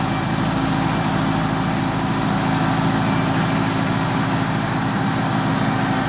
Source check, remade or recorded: recorded